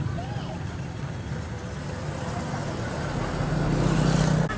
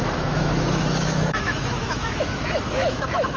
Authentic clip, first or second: first